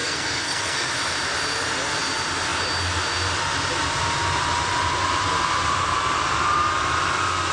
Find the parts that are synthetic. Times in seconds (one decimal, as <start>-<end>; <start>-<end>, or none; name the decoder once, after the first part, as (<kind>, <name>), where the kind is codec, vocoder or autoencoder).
0.0-0.9 (codec, SNAC)